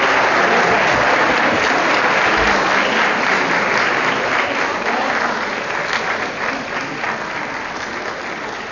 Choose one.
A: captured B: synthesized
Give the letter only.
A